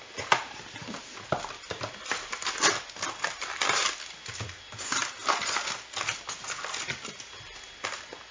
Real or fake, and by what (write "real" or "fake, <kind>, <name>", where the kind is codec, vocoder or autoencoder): real